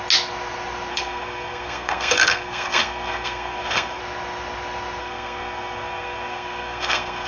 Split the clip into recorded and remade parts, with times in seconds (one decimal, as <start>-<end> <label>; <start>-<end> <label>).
0.0-0.9 recorded; 0.9-4.0 remade; 4.0-5.0 recorded; 5.0-7.3 remade